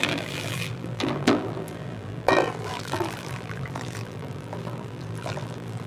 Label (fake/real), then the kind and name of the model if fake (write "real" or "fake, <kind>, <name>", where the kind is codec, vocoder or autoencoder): fake, vocoder, BigVGAN v2